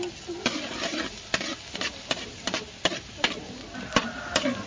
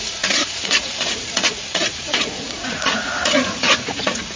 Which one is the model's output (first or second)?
second